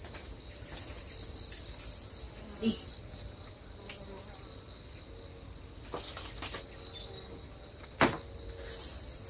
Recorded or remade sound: recorded